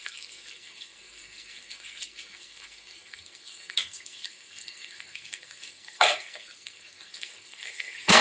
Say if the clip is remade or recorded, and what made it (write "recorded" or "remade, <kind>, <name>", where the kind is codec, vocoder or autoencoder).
remade, codec, SNAC